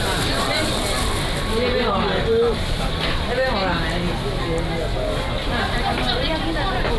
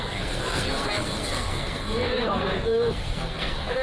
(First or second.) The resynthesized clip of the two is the second